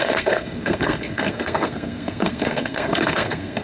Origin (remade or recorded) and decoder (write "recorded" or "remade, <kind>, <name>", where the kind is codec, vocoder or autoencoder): remade, codec, SNAC